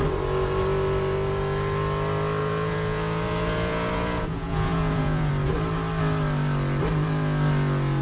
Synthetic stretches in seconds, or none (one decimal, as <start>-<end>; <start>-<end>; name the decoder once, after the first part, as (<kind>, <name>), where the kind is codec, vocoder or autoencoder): 2.4-5.3 (vocoder, Vocos)